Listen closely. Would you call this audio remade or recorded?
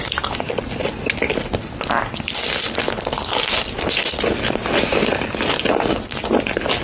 recorded